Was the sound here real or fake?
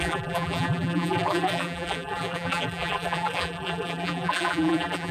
fake